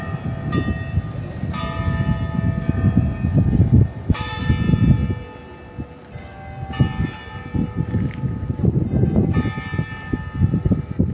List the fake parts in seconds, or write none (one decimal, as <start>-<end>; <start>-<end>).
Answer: 3.6-4.5